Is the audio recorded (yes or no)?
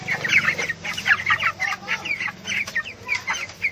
yes